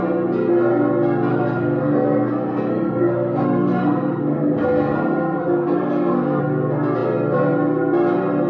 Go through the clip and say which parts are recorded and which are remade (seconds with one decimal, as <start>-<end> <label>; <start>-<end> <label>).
0.0-1.3 recorded; 1.3-6.4 remade; 6.4-8.5 recorded